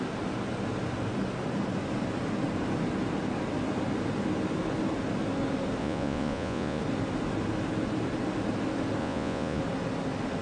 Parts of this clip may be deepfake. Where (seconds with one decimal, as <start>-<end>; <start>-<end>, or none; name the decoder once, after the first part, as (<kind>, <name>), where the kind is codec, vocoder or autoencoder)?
5.8-6.8 (vocoder, Vocos); 9.0-9.6